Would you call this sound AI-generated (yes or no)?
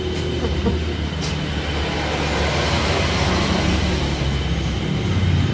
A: no